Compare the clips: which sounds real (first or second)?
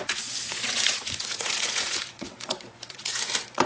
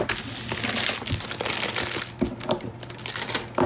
second